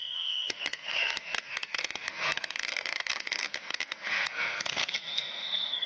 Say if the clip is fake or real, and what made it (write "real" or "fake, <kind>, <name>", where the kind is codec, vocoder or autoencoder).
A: fake, codec, SNAC